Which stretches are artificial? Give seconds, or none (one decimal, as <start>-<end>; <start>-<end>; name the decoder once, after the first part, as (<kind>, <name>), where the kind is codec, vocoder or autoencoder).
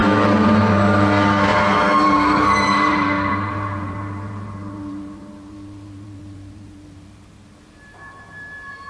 0.0-8.9 (vocoder, BigVGAN v2)